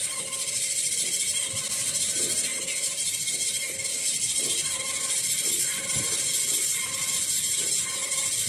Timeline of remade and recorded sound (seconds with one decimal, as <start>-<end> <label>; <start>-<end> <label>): 0.0-8.5 recorded